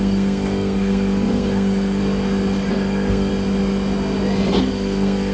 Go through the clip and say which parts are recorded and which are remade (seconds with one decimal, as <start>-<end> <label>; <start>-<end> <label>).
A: 0.0-2.0 remade; 2.0-2.7 recorded; 2.7-3.3 remade; 3.3-4.6 recorded; 4.6-5.3 remade